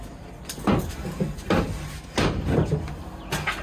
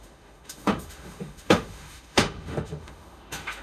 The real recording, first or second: first